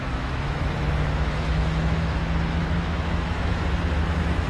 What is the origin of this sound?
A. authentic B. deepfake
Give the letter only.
B